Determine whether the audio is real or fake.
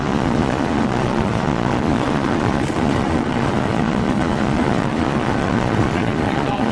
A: fake